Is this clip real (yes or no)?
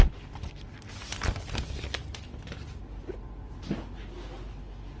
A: yes